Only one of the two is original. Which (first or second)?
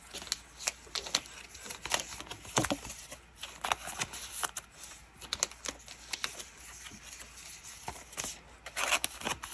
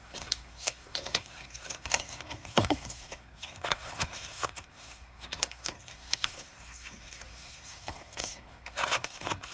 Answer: first